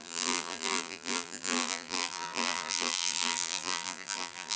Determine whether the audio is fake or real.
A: fake